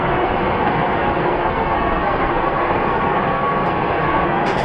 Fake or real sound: fake